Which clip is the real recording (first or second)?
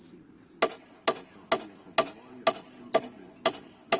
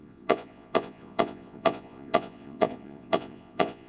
first